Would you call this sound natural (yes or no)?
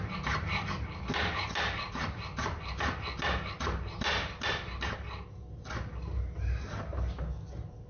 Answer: yes